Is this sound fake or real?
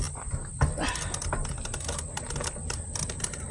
real